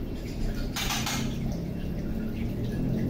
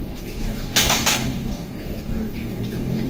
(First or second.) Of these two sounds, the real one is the first